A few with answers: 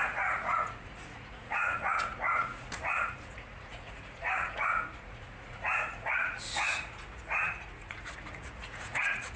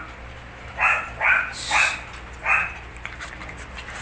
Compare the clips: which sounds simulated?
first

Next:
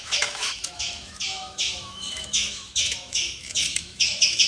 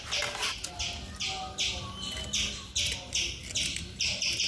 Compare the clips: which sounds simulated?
first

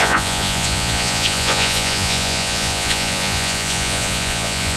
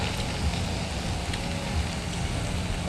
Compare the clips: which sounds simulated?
first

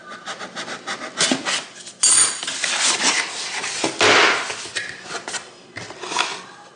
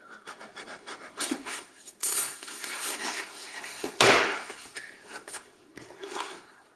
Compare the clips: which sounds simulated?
second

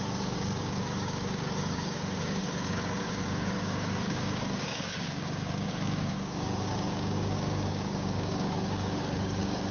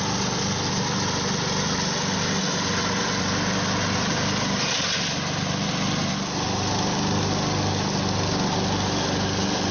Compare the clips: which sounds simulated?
first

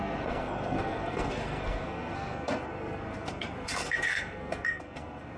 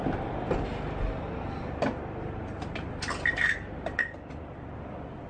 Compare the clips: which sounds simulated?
first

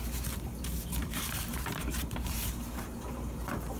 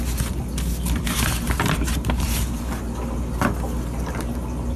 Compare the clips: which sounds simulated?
first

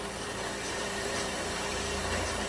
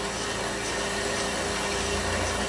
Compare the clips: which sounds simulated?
first